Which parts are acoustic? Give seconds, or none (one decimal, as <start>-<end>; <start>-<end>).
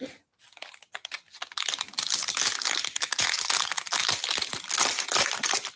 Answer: 0.0-5.8